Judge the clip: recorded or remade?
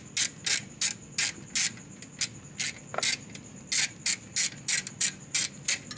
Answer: recorded